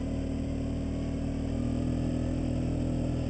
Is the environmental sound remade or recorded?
recorded